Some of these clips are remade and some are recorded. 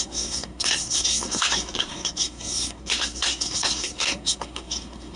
remade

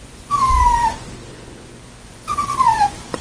remade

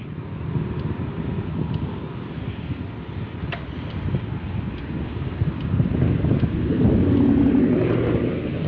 recorded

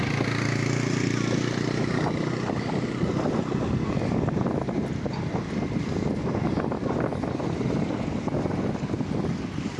recorded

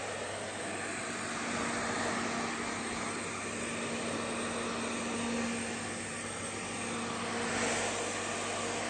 recorded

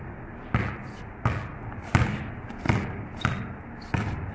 recorded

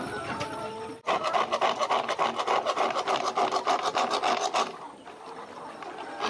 recorded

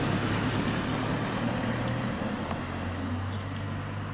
recorded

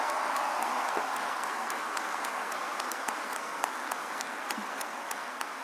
remade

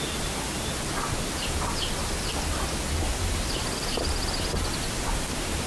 recorded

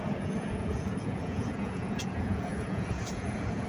remade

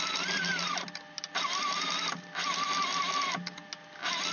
recorded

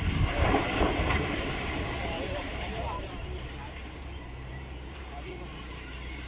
remade